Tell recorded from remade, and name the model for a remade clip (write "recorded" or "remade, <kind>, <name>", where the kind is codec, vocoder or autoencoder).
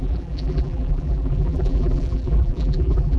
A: remade, vocoder, BigVGAN v2